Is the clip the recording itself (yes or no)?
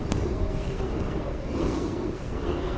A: no